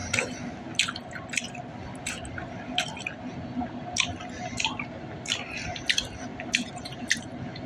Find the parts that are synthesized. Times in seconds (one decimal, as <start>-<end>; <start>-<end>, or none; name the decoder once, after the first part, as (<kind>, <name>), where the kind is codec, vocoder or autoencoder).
6.3-7.2 (vocoder, BigVGAN v2)